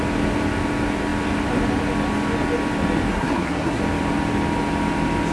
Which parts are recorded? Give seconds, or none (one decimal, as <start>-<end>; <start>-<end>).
0.0-3.1; 3.8-5.3